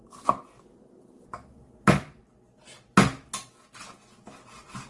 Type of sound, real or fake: real